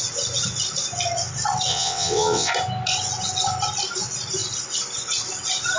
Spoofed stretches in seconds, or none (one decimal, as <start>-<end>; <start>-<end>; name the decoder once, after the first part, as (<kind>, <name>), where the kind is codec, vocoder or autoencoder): 1.7-2.5 (vocoder, WaveNeXt)

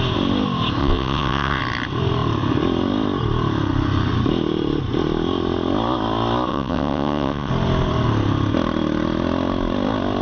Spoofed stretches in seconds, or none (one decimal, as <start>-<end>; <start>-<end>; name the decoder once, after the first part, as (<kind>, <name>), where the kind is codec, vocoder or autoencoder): 0.8-1.6 (vocoder, WaveNeXt); 6.5-7.5

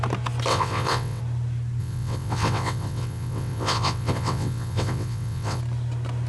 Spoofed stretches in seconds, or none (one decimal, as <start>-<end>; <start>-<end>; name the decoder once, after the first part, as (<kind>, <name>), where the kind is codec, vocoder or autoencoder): 0.5-1.2 (vocoder, WaveNeXt); 1.8-5.6

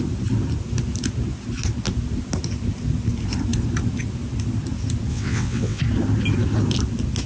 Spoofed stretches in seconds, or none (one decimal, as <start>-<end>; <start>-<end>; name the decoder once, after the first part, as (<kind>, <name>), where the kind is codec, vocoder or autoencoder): 5.1-5.8 (vocoder, WaveNeXt)